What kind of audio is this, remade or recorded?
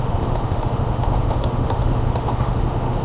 remade